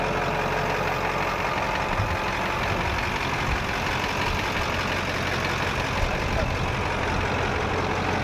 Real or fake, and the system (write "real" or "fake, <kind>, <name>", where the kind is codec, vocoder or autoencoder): real